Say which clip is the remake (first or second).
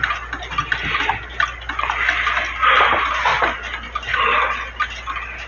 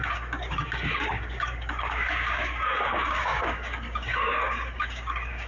second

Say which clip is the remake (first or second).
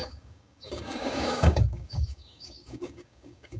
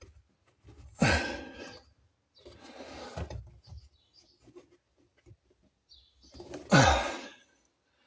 first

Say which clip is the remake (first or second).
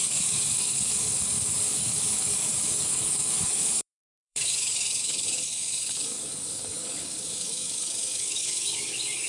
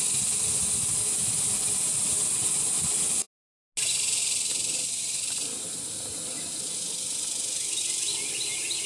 first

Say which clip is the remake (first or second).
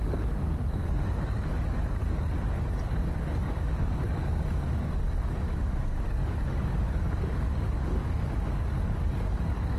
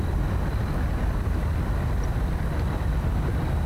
first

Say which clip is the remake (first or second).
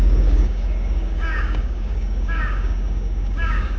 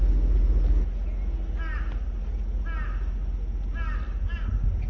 first